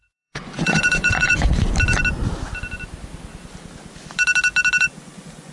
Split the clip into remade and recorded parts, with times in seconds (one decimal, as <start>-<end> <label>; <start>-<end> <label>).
0.0-1.5 remade; 1.5-4.8 recorded; 4.8-5.5 remade